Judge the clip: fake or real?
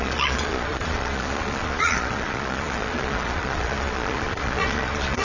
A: fake